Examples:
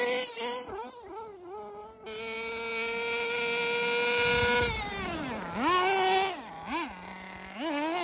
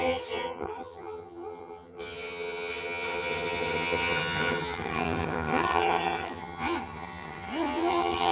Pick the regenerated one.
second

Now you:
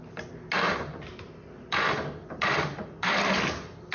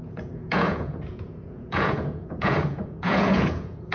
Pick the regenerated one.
second